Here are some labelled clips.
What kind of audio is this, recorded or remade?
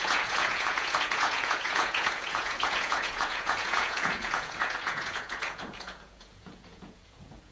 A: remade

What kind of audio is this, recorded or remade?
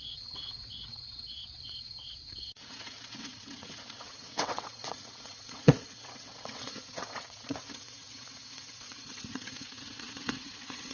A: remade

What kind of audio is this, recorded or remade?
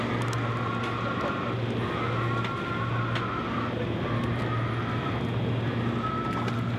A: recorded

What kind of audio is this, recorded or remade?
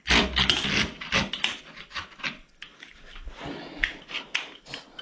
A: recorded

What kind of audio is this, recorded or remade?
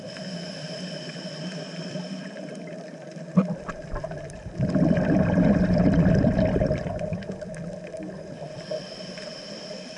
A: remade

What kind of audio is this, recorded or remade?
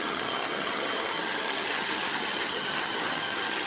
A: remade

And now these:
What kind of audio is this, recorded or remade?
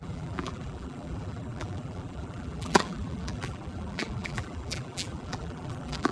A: remade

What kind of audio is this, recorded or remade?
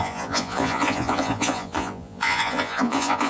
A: remade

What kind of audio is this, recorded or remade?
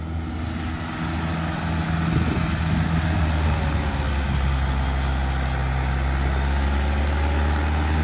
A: recorded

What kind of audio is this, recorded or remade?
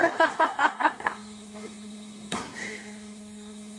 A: remade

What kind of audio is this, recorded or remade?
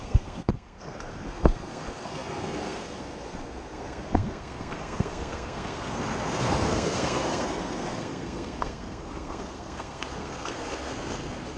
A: remade